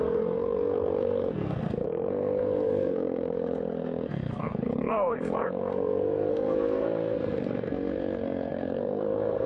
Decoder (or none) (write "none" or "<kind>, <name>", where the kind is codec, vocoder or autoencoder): codec, SNAC